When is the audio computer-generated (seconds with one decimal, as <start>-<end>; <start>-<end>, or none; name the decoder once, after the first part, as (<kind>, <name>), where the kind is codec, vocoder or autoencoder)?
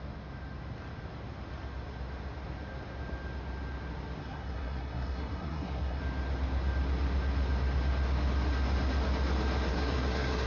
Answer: 4.2-6.0 (codec, SNAC); 9.7-10.5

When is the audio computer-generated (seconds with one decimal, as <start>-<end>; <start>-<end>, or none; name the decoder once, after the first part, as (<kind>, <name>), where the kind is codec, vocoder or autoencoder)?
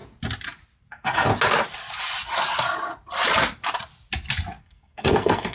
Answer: 0.9-1.3 (codec, SNAC); 4.6-5.5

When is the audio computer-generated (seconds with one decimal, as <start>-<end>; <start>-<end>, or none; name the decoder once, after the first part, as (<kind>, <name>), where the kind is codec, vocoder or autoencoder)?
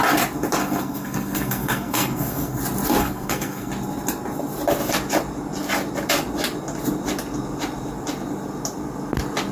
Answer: 0.6-2.6 (codec, SNAC); 3.0-3.7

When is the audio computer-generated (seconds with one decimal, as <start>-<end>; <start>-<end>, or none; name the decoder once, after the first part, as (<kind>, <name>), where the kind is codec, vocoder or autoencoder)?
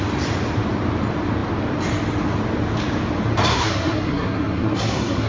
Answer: 3.5-5.3 (codec, SNAC)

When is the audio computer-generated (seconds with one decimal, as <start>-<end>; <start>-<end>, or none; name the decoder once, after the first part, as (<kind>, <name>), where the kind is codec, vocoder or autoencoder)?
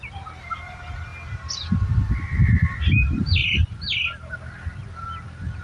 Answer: none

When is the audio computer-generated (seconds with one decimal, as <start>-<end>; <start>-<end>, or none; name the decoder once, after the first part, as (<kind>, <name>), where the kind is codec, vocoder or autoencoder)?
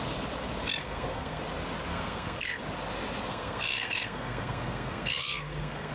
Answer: 0.8-1.4 (codec, SNAC); 1.9-2.6; 3.3-5.9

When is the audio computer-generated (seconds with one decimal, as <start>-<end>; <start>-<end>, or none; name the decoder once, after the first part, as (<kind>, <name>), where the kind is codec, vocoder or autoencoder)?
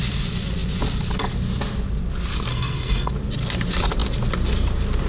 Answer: 2.5-3.1 (codec, SNAC)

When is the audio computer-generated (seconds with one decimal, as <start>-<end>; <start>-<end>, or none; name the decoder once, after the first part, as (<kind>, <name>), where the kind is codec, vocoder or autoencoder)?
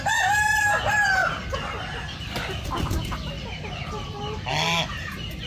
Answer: none